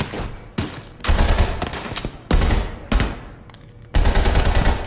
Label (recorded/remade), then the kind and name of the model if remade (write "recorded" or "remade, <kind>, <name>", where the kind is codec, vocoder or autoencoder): recorded